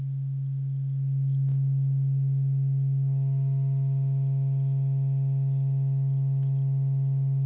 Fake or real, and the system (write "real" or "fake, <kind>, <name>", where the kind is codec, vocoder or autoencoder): real